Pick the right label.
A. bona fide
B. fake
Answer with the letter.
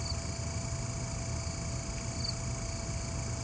A